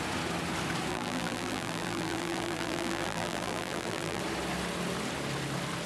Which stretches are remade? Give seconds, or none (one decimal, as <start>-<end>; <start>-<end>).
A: 0.9-4.2